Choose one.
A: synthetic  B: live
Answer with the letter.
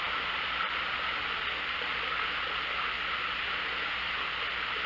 B